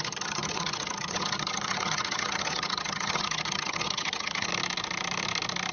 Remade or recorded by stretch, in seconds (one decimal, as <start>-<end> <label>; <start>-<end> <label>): 0.0-4.5 remade; 4.5-5.7 recorded

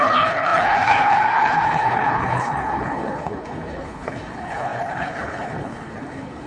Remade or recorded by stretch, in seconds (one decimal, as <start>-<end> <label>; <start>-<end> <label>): 0.0-6.5 remade